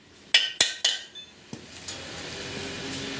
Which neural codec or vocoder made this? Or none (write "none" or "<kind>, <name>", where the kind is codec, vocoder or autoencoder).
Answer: none